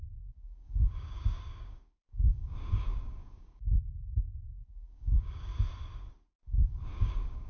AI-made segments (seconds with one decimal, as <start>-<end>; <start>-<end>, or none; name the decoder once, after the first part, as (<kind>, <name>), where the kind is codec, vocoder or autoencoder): 0.0-5.5 (codec, DAC); 6.9-7.5